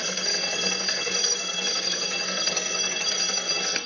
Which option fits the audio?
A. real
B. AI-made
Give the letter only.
B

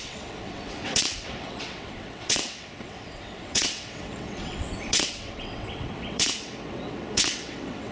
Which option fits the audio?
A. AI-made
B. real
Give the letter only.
A